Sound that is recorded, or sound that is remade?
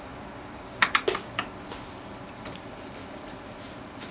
recorded